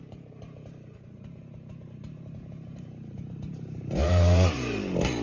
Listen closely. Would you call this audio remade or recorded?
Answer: remade